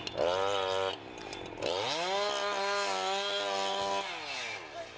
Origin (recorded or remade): recorded